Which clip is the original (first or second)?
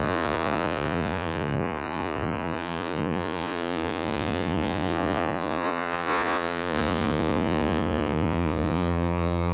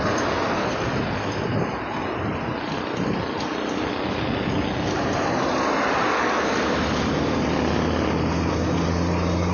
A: second